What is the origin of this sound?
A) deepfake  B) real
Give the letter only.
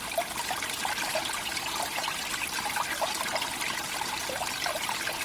B